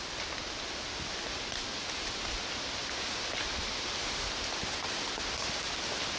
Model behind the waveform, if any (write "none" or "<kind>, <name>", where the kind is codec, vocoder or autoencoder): none